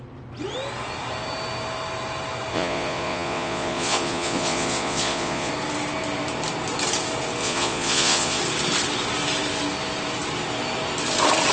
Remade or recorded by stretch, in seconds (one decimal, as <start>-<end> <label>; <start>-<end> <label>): 0.0-2.5 recorded; 2.5-5.5 remade; 5.5-7.4 recorded; 7.4-8.4 remade; 8.4-11.5 recorded

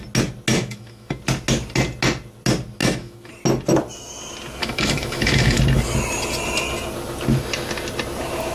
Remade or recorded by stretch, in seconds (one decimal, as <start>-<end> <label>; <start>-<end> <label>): 0.0-0.5 recorded; 0.5-1.2 remade; 1.2-2.8 recorded; 2.8-3.3 remade; 3.3-4.6 recorded; 4.6-5.6 remade; 5.6-8.5 recorded

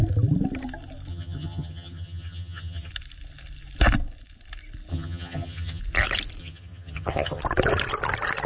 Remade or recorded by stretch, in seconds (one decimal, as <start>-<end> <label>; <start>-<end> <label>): 0.0-1.1 recorded; 1.1-2.9 remade; 2.9-4.9 recorded; 4.9-5.8 remade; 5.8-6.4 recorded; 6.4-7.4 remade; 7.4-8.5 recorded

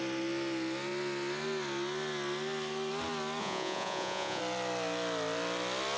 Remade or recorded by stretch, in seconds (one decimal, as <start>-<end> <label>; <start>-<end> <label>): 0.0-3.4 recorded; 3.4-4.4 remade; 4.4-6.0 recorded

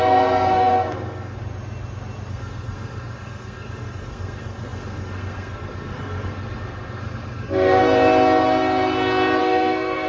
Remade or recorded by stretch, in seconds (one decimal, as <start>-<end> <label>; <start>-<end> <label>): 0.0-1.4 remade; 1.4-2.3 recorded; 2.3-7.8 remade; 7.8-9.4 recorded; 9.4-10.1 remade